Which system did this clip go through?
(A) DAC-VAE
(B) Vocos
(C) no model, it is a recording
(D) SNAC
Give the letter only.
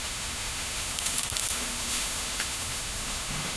A